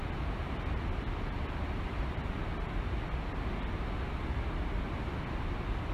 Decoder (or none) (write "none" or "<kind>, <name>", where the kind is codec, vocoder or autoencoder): none